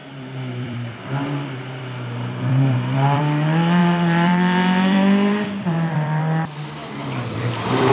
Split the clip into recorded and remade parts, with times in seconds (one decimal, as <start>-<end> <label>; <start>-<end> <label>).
0.0-3.2 remade; 3.2-3.8 recorded; 3.8-6.2 remade; 6.2-6.8 recorded; 6.8-7.9 remade